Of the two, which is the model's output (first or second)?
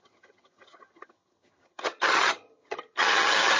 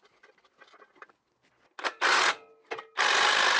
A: first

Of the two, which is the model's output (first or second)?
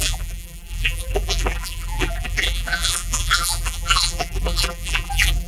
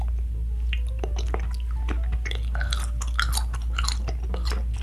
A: first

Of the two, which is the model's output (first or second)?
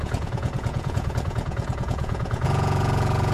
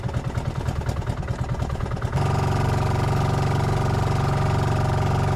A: first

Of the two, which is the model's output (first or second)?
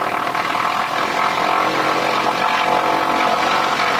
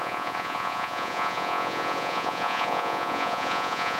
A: second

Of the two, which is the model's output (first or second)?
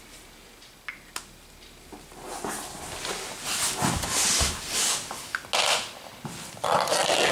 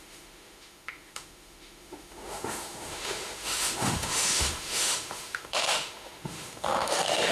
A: second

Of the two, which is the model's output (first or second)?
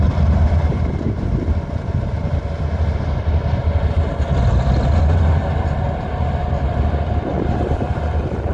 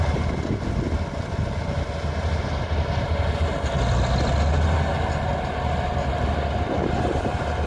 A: first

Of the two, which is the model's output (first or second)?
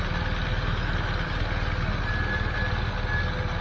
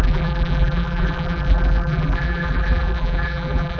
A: second